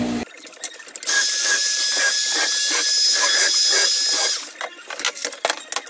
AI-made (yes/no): no